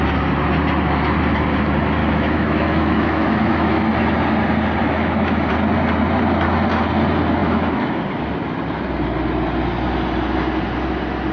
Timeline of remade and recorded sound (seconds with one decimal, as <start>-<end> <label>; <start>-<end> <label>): 0.0-2.0 recorded; 2.0-3.8 remade; 3.8-4.8 recorded; 4.8-5.5 remade; 5.5-7.4 recorded; 7.4-8.0 remade; 8.0-11.3 recorded